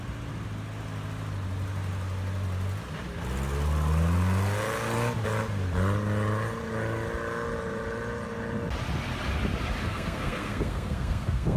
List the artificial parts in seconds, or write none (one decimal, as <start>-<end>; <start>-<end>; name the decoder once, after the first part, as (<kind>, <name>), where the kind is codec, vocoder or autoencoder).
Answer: 9.8-11.6 (codec, SNAC)